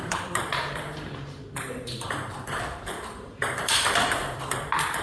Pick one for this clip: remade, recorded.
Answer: remade